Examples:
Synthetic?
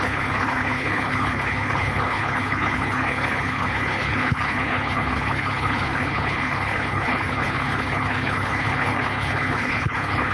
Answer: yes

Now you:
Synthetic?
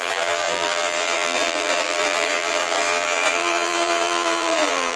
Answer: yes